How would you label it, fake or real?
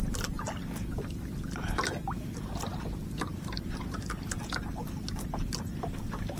real